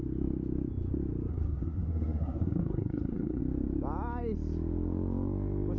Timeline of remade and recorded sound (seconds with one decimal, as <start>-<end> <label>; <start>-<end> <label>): 0.0-1.3 recorded; 1.3-3.4 remade; 3.4-5.8 recorded